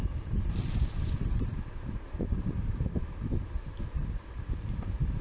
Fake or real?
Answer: fake